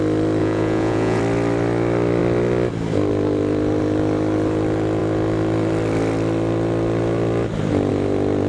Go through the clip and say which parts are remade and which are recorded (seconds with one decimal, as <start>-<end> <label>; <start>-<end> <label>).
0.0-0.4 recorded; 0.4-1.2 remade; 1.2-8.5 recorded